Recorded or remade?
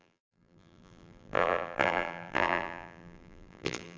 remade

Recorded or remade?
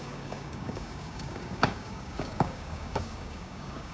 remade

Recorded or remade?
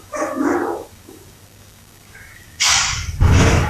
remade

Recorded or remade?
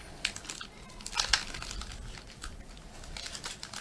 recorded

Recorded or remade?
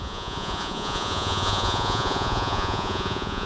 remade